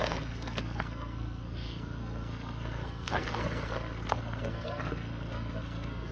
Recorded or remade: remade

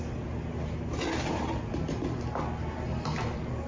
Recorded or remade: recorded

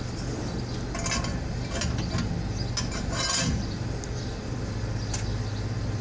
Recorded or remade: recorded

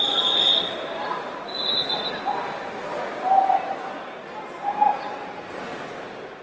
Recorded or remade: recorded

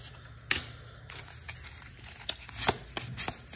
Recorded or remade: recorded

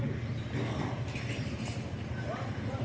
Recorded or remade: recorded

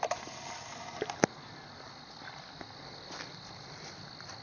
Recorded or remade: recorded